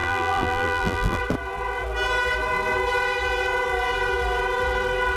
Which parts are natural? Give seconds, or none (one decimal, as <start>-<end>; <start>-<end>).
1.2-5.2